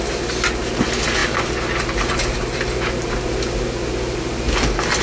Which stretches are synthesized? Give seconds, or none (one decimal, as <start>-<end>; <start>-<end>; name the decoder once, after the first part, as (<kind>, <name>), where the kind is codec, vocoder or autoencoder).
none